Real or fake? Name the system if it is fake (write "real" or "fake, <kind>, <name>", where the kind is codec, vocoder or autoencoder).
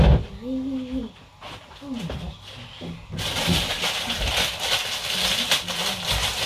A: real